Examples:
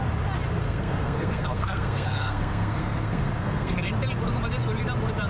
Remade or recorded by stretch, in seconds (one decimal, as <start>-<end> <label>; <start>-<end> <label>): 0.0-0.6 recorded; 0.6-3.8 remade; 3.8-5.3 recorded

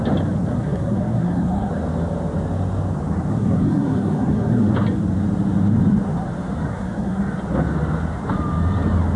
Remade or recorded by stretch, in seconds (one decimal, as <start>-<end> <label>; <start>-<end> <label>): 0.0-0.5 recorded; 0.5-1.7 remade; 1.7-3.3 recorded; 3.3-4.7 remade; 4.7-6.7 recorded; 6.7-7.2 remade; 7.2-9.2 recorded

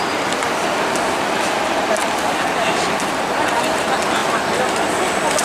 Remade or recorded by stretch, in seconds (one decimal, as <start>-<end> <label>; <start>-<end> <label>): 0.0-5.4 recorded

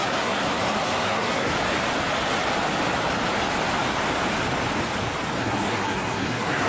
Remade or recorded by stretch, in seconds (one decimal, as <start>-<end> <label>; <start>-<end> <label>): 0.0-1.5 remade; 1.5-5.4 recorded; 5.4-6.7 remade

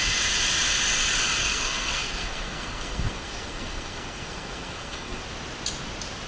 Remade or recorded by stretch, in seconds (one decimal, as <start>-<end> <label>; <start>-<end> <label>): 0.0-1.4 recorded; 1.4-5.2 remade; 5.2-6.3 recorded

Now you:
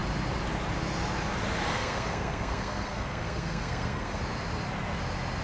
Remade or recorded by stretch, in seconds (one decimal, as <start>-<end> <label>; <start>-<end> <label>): 0.0-1.7 recorded; 1.7-4.2 remade; 4.2-5.4 recorded

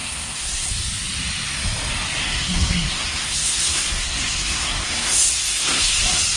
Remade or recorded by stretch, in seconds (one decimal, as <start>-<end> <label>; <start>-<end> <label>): 0.0-0.7 remade; 0.7-2.2 recorded; 2.2-6.0 remade; 6.0-6.4 recorded